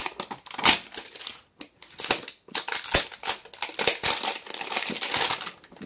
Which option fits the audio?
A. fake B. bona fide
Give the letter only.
B